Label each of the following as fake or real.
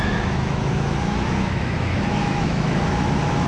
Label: fake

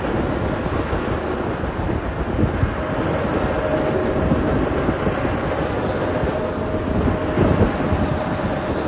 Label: real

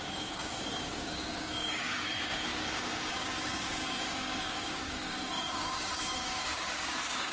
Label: fake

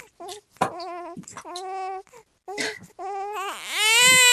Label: real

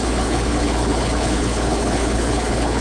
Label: fake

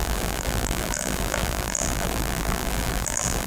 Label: fake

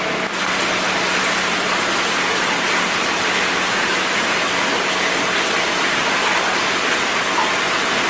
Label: real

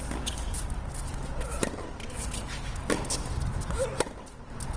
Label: real